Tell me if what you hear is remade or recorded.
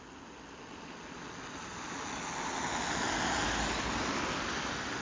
recorded